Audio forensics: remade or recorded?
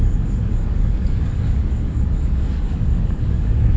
remade